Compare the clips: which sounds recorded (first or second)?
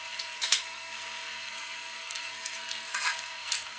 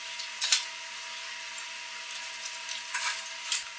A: second